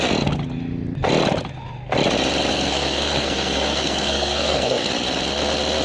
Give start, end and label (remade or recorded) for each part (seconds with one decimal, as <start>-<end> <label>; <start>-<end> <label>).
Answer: 0.0-2.5 recorded; 2.5-4.9 remade; 4.9-5.8 recorded